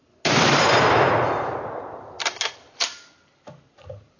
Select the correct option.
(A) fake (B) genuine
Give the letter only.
B